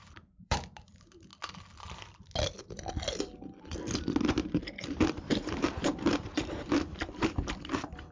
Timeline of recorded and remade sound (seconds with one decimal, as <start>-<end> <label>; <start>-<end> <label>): 0.0-1.3 remade; 1.3-4.3 recorded; 4.3-8.1 remade

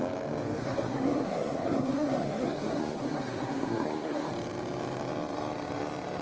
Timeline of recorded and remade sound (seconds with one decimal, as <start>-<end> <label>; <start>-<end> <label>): 0.0-0.6 recorded; 0.6-4.3 remade; 4.3-6.2 recorded

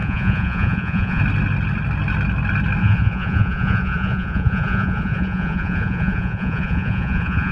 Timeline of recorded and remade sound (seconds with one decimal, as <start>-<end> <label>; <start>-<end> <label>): 0.0-1.2 remade; 1.2-2.8 recorded; 2.8-7.5 remade

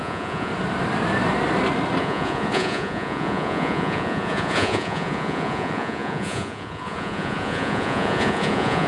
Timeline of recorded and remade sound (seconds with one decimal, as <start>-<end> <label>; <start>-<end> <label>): 0.0-0.5 remade; 0.5-2.0 recorded; 2.0-8.9 remade

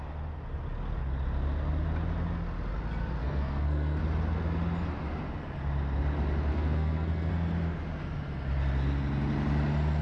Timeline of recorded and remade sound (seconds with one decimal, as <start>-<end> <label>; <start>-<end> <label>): 0.0-3.2 recorded; 3.2-4.0 remade; 4.0-6.5 recorded; 6.5-7.3 remade; 7.3-10.0 recorded

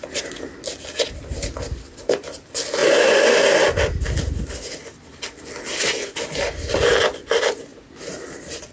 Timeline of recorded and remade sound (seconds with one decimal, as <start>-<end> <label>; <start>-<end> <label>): 0.0-8.7 recorded

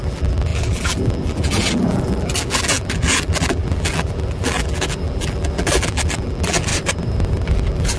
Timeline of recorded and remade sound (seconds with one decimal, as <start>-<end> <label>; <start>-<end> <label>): 0.0-6.7 remade; 6.7-7.5 recorded; 7.5-8.0 remade